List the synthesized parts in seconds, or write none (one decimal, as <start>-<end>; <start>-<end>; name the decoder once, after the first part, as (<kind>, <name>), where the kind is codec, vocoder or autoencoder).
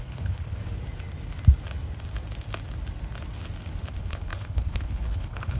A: 0.0-0.6 (codec, HILCodec); 3.9-5.6